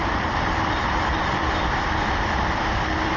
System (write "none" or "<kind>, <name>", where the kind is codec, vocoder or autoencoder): vocoder, BigVGAN v2